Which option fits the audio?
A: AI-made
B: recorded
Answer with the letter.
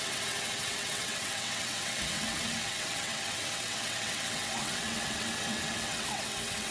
A